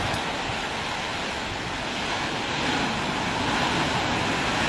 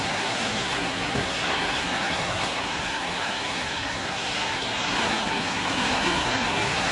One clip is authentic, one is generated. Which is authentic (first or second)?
first